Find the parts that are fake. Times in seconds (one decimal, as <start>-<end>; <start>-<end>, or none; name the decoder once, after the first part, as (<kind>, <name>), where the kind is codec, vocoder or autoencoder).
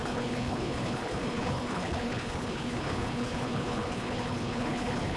0.0-5.2 (codec, HILCodec)